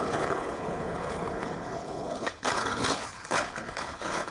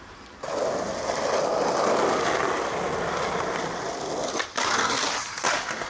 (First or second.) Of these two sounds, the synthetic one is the first